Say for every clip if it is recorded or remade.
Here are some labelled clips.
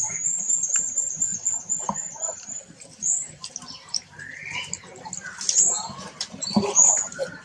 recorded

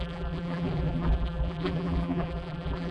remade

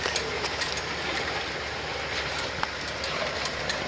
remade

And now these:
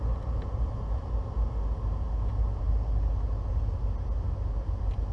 recorded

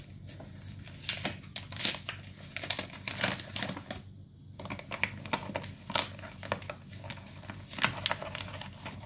recorded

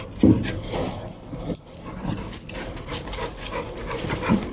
recorded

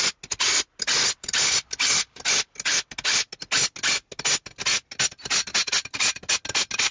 recorded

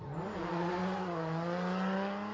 recorded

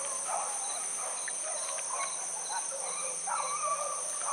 remade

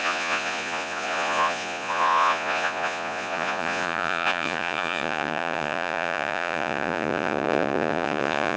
remade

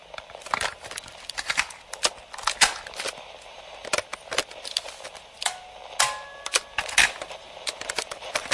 recorded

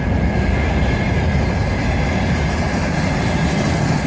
recorded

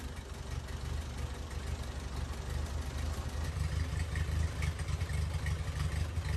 recorded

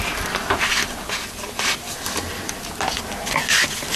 recorded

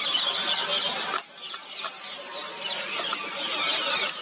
recorded